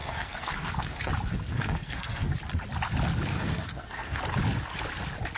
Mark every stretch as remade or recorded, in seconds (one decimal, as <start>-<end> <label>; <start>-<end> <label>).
0.0-1.1 remade; 1.1-1.5 recorded; 1.5-2.3 remade; 2.3-3.3 recorded; 3.3-4.2 remade; 4.2-5.4 recorded